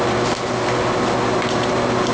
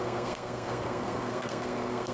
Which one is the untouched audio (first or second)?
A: first